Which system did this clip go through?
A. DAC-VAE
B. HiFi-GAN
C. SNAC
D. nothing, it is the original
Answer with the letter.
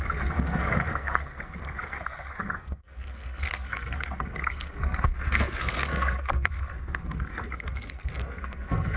C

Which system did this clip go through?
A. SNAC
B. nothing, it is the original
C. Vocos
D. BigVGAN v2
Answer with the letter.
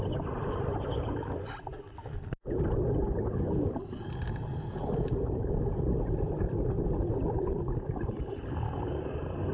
B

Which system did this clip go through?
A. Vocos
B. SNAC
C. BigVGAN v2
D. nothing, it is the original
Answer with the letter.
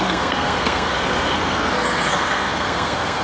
B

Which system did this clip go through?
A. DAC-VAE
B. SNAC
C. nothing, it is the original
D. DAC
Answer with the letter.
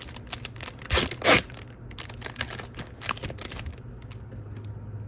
C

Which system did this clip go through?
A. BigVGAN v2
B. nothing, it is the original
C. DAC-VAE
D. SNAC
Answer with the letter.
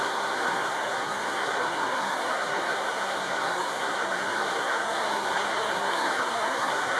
D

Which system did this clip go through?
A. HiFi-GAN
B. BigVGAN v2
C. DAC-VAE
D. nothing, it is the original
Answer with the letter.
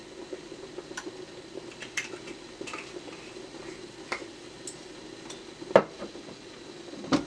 D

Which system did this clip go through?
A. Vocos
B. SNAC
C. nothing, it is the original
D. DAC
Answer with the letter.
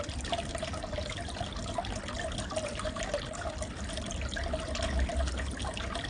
C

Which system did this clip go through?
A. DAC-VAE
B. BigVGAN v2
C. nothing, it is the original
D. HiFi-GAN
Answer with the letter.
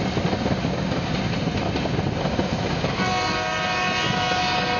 C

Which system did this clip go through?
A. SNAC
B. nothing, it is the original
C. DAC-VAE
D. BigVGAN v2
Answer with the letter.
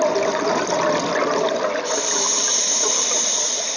B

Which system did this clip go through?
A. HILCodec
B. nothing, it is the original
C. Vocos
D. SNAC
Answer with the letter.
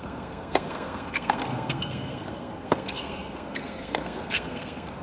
D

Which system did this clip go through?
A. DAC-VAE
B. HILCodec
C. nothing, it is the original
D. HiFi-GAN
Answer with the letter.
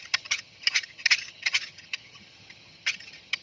D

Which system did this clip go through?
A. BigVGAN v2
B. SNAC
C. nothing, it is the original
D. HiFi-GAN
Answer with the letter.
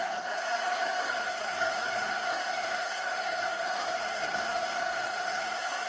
B